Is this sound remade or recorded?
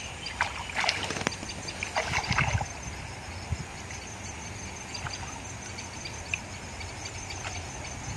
recorded